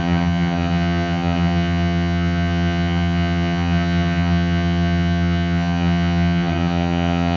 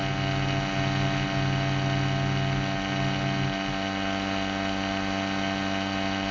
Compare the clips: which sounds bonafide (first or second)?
second